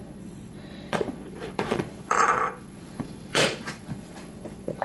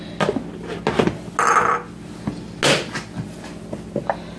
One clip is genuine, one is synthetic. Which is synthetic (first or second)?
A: first